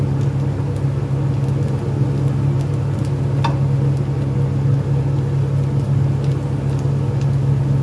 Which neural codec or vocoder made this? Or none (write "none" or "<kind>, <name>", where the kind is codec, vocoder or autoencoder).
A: none